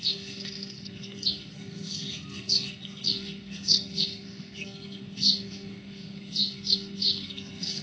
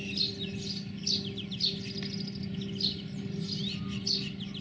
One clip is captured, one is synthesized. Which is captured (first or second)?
second